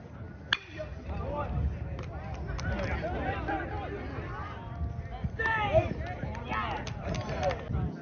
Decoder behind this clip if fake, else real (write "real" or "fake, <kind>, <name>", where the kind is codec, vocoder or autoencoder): real